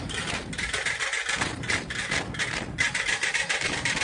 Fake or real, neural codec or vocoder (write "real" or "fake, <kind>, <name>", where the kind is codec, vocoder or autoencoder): fake, vocoder, BigVGAN v2